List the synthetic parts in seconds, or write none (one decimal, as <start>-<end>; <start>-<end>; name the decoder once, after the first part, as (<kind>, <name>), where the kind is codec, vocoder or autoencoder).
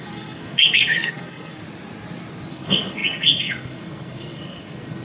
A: 0.0-1.6 (codec, SNAC); 2.5-5.0